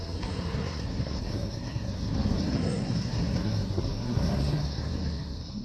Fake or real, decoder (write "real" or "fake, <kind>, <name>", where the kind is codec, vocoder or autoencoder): fake, codec, SNAC